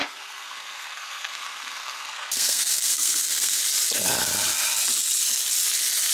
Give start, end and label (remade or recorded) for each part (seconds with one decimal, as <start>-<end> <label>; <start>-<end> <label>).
0.0-3.6 remade; 3.6-6.1 recorded